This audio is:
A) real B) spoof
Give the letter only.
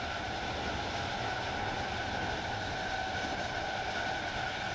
A